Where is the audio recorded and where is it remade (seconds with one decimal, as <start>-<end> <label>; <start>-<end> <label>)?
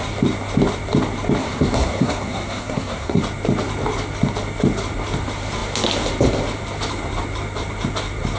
0.0-1.4 recorded; 1.4-3.2 remade; 3.2-8.4 recorded